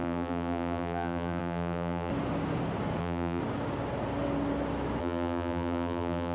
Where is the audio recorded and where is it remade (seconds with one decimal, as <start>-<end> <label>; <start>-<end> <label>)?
0.0-2.1 remade; 2.1-3.0 recorded; 3.0-3.4 remade; 3.4-5.0 recorded; 5.0-6.3 remade